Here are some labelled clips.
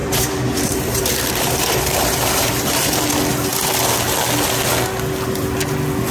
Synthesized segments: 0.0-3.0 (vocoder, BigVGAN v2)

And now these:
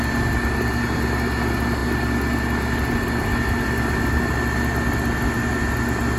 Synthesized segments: none

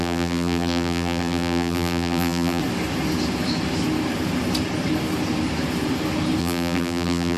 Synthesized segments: 0.0-2.6 (vocoder, BigVGAN v2); 6.4-7.4